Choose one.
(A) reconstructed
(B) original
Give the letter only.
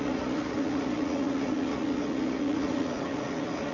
A